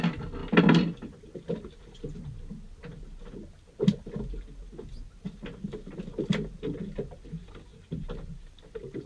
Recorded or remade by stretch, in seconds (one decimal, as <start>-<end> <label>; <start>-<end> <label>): 0.0-9.1 recorded